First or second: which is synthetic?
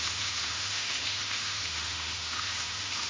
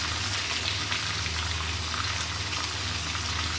first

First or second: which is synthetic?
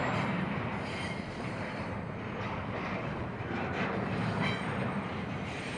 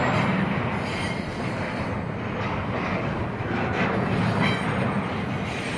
first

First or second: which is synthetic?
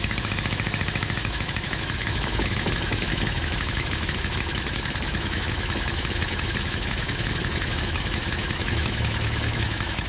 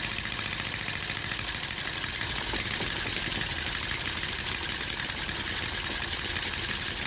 first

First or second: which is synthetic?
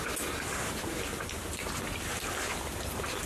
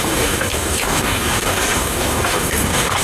second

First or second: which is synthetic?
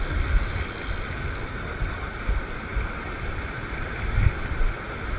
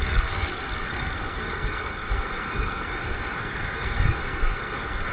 second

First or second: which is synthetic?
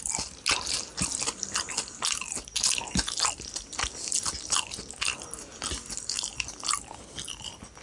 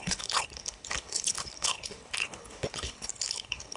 second